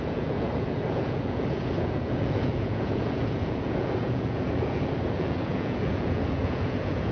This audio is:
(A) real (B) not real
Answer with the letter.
B